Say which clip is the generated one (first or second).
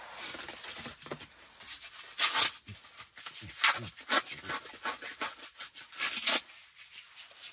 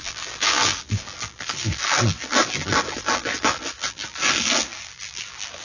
second